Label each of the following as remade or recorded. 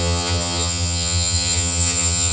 remade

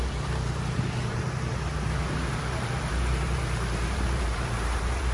remade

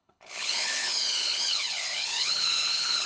remade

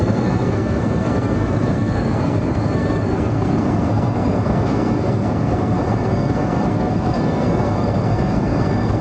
remade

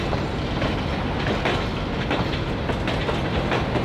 recorded